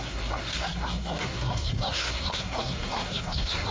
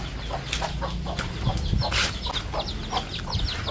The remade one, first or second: first